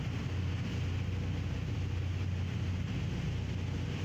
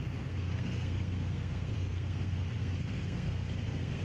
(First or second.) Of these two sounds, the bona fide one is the first